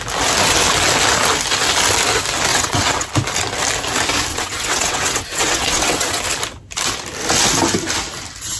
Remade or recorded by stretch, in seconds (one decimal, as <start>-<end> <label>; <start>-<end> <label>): 0.0-2.5 recorded; 2.5-3.1 remade; 3.1-4.3 recorded; 4.3-6.2 remade; 6.2-8.6 recorded